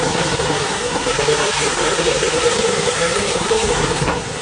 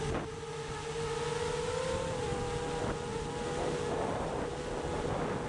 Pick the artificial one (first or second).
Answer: first